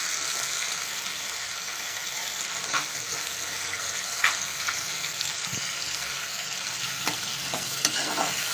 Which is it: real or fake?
fake